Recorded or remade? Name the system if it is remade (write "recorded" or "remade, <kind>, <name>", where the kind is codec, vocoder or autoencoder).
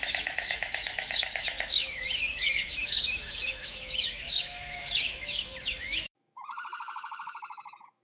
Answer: remade, autoencoder, DAC-VAE